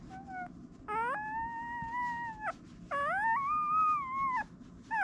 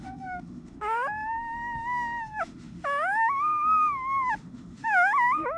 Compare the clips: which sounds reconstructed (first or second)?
second